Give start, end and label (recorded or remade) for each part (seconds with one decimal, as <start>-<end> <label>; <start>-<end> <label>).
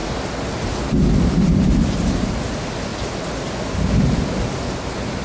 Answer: 0.0-5.2 recorded